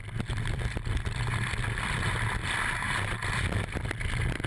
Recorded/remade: recorded